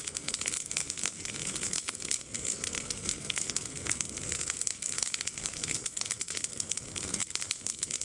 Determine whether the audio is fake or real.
fake